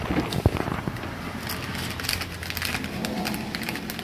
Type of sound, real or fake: real